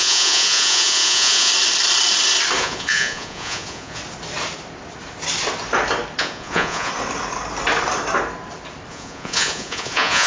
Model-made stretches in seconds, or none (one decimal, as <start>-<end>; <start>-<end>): 0.0-1.5; 2.6-4.0; 6.2-6.9; 8.9-10.3